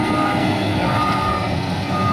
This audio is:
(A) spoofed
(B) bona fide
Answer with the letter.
A